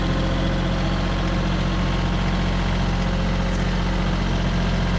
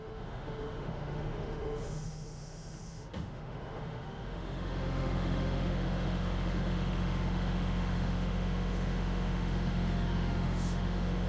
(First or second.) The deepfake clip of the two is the second